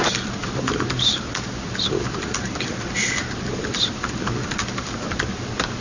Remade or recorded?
remade